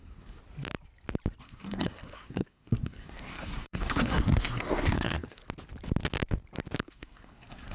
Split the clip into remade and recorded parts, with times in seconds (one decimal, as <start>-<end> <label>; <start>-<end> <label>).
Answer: 0.0-0.4 remade; 0.4-1.4 recorded; 1.4-5.4 remade; 5.4-6.8 recorded; 6.8-7.7 remade